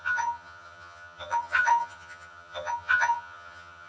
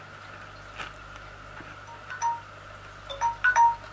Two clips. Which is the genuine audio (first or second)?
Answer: second